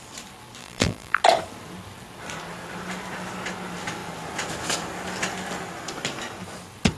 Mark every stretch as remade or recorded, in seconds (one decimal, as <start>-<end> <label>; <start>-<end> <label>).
0.0-0.6 recorded; 0.6-1.2 remade; 1.2-7.0 recorded